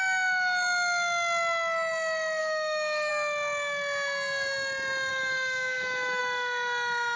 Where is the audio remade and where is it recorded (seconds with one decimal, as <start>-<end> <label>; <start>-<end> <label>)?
0.0-2.4 recorded; 2.4-3.1 remade; 3.1-5.1 recorded; 5.1-6.2 remade; 6.2-7.2 recorded